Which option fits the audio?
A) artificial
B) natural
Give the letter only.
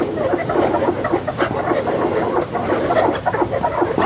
B